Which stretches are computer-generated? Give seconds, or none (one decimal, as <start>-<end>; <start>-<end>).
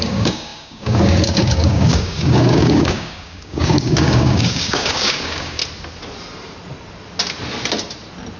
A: 0.0-5.6